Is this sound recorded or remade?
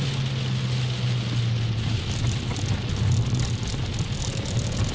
recorded